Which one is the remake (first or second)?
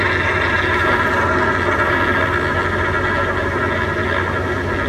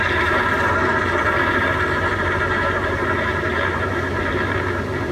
second